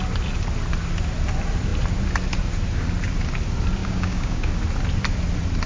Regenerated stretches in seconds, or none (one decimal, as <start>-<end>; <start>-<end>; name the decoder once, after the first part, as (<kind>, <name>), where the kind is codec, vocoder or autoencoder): 3.8-4.5 (codec, DAC)